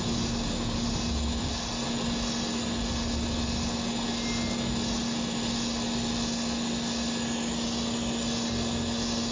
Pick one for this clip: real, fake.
real